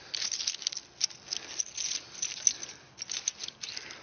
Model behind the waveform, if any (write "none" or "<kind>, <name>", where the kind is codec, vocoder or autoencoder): none